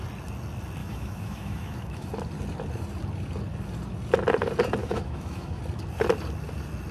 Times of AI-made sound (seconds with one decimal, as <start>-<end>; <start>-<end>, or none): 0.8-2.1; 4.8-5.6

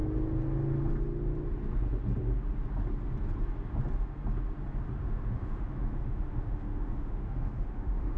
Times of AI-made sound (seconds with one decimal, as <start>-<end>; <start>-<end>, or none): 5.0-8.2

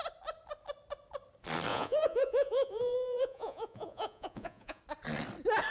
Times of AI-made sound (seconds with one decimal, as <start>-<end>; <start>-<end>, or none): 1.7-4.8

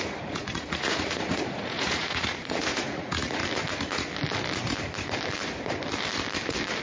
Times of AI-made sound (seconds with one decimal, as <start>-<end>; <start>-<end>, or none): 0.0-3.4

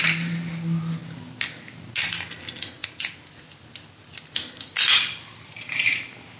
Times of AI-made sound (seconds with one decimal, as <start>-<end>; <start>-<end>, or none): 2.8-4.5